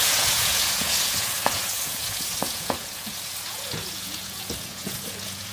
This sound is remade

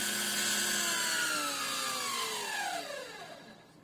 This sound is recorded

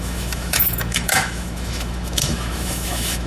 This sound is remade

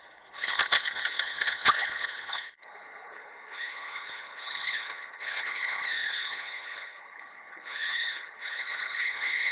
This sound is remade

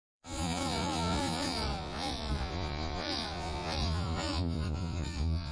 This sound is remade